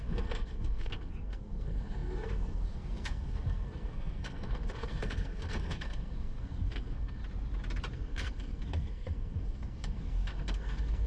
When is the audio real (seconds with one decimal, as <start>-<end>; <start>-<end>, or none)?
7.2-7.9